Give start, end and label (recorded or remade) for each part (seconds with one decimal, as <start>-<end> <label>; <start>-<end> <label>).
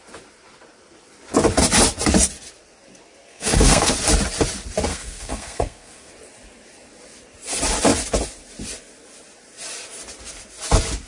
0.0-3.3 recorded; 3.3-3.9 remade; 3.9-4.9 recorded; 4.9-6.1 remade; 6.1-11.1 recorded